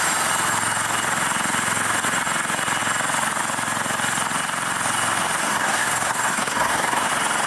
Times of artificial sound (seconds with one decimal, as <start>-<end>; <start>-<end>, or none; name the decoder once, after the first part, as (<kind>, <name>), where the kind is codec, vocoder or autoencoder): 5.4-7.1 (codec, SNAC)